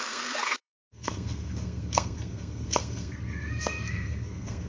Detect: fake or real fake